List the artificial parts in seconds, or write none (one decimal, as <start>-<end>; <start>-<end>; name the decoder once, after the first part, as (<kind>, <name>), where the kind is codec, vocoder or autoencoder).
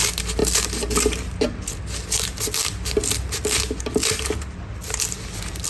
none